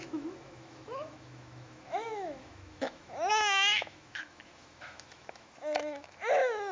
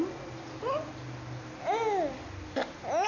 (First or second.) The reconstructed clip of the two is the first